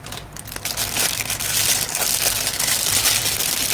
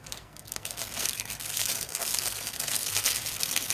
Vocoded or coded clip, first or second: second